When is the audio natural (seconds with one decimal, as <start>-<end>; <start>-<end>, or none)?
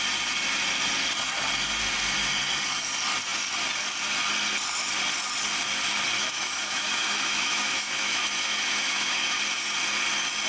0.0-6.2; 9.4-10.5